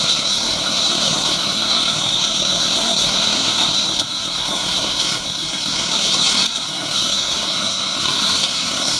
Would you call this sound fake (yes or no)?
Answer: yes